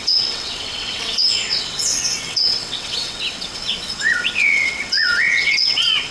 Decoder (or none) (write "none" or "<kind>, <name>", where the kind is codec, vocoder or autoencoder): vocoder, WaveNeXt